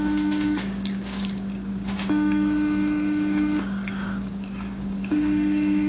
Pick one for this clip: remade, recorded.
remade